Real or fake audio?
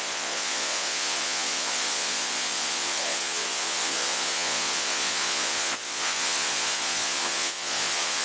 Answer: fake